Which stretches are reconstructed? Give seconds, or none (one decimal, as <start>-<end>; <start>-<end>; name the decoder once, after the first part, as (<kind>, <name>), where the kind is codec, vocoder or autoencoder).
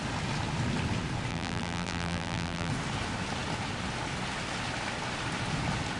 1.3-2.7 (vocoder, BigVGAN v2)